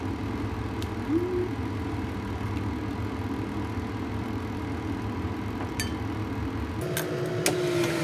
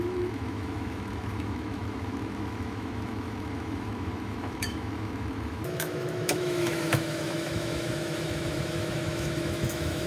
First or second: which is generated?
second